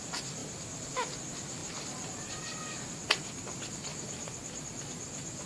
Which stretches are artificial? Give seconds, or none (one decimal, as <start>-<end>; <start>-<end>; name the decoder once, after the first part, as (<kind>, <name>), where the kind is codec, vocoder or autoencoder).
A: none